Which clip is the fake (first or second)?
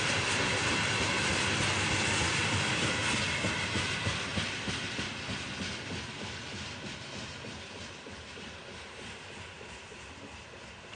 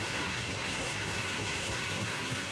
second